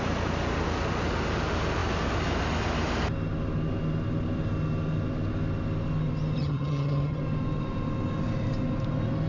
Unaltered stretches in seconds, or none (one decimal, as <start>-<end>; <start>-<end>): 0.0-6.4; 7.2-9.3